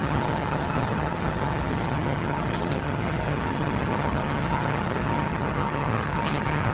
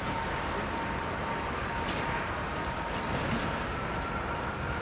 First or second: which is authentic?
second